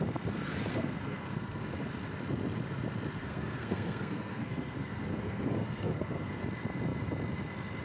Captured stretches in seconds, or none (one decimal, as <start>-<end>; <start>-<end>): 0.0-0.7; 1.6-3.2; 6.4-7.8